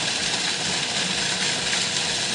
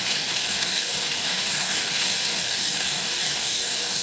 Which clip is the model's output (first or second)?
second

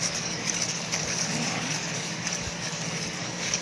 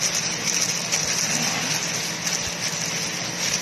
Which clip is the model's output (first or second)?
first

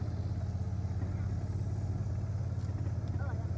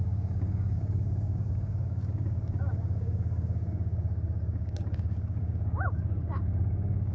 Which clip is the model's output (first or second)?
second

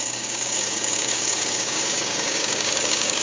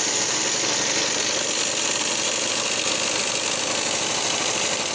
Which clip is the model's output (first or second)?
first